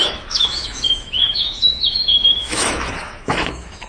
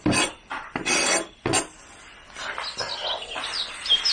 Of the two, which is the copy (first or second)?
first